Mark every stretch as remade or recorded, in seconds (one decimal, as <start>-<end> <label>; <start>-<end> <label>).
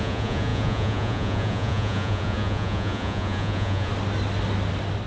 0.0-3.9 remade; 3.9-5.1 recorded